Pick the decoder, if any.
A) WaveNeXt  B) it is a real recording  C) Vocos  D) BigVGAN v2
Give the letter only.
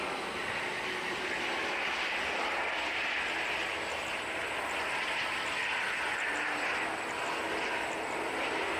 B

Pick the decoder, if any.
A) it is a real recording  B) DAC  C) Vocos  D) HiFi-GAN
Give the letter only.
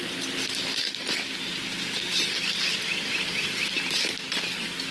A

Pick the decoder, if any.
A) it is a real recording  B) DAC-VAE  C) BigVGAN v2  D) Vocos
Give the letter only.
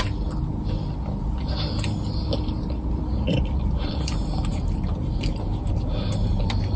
A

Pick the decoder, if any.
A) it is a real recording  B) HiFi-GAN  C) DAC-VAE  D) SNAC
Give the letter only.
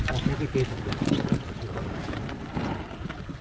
A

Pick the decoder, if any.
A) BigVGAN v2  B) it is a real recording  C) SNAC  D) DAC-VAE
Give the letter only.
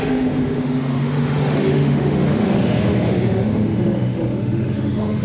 D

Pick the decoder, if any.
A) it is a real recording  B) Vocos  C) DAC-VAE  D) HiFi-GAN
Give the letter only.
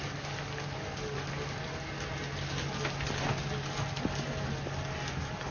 A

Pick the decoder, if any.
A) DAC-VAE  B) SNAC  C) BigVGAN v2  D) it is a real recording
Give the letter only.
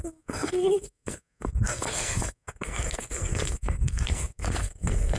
B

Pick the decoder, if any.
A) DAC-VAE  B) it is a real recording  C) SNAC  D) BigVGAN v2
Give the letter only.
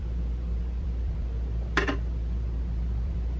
D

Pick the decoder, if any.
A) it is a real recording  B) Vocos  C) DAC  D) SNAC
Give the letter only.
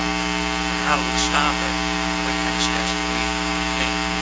C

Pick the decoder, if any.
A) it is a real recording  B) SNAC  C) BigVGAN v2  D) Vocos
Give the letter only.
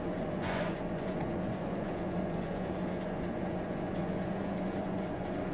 D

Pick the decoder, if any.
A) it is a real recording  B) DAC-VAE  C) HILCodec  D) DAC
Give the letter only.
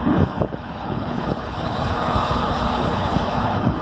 C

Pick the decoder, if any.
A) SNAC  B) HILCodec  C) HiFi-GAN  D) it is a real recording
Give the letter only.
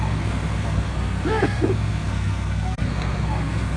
A